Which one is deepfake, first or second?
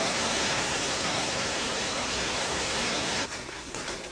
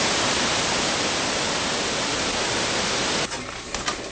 first